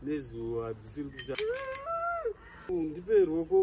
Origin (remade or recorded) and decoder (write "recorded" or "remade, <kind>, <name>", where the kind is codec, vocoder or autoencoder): recorded